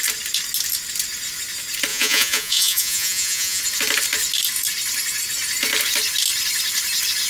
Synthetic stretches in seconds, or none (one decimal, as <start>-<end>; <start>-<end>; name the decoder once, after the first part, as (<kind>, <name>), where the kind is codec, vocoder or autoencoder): 1.9-3.6 (vocoder, Vocos)